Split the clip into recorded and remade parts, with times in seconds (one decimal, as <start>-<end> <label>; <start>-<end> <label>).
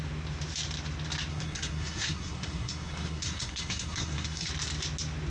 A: 0.0-1.3 recorded; 1.3-4.5 remade; 4.5-5.3 recorded